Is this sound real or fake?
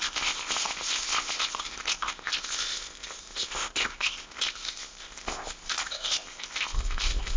fake